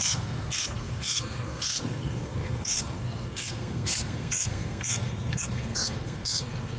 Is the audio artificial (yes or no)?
yes